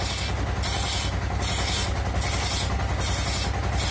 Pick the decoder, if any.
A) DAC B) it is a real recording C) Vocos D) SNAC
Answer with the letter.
B